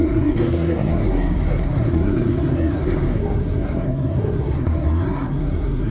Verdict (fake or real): fake